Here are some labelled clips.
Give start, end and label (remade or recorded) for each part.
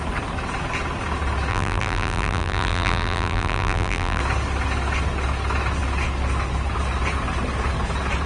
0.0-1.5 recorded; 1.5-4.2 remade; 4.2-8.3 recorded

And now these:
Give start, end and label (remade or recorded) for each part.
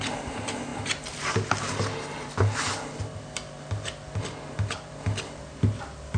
0.0-6.2 recorded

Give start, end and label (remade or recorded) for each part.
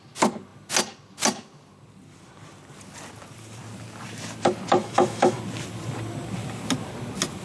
0.0-4.8 recorded; 4.8-5.4 remade; 5.4-7.4 recorded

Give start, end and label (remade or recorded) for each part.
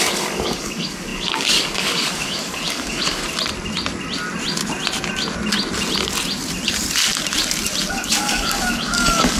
0.0-3.2 remade; 3.2-7.9 recorded; 7.9-9.4 remade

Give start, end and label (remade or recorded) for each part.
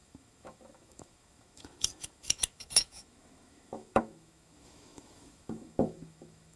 0.0-6.6 remade